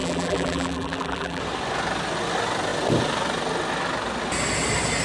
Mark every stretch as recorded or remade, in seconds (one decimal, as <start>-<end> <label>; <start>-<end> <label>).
0.0-1.4 remade; 1.4-5.0 recorded